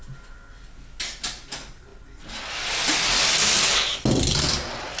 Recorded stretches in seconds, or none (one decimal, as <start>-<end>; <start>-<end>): 0.0-5.0